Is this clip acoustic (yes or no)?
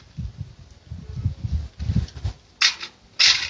yes